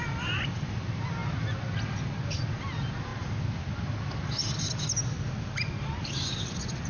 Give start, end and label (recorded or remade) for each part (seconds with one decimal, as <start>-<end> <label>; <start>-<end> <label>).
0.0-6.9 recorded